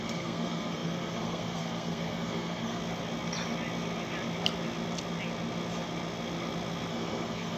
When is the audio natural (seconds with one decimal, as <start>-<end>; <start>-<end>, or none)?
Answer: 2.8-6.9